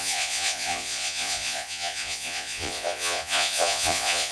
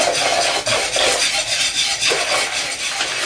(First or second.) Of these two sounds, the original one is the second